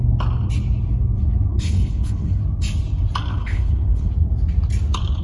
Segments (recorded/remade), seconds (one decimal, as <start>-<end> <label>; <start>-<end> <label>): 0.0-1.5 recorded; 1.5-2.4 remade; 2.4-3.3 recorded; 3.3-4.1 remade; 4.1-5.2 recorded